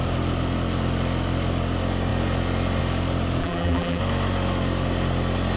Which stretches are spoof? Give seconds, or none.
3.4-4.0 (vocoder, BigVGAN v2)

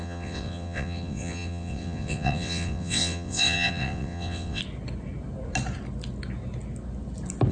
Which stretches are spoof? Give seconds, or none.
0.0-4.6 (vocoder, WaveNeXt)